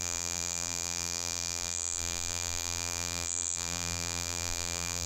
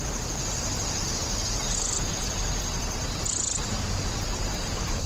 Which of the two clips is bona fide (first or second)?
second